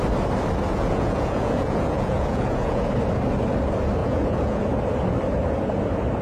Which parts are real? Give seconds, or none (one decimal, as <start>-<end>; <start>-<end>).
0.0-0.7; 2.9-4.0; 4.6-6.2